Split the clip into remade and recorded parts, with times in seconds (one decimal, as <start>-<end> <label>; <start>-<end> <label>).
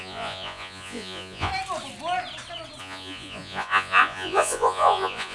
0.0-1.5 remade; 1.5-2.8 recorded; 2.8-5.3 remade